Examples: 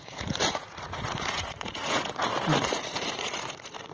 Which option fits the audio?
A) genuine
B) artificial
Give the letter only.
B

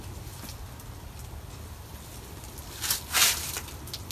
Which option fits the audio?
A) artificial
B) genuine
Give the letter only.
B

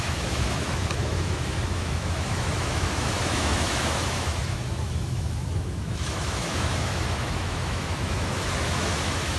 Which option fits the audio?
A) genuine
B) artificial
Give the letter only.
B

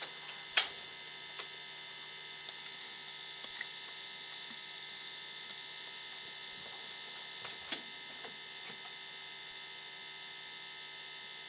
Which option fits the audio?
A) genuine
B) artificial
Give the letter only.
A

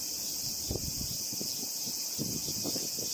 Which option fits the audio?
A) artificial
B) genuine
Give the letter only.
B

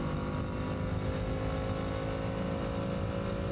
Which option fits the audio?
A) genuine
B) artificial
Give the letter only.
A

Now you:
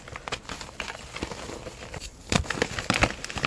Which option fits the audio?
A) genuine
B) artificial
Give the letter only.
A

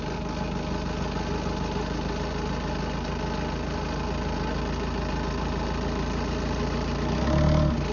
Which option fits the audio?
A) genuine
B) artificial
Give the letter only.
A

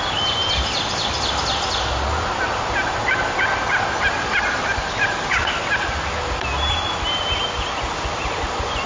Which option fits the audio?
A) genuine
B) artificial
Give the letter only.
A